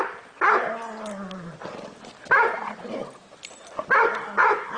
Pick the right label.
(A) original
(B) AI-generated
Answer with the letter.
A